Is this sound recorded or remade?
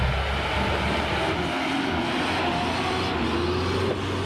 recorded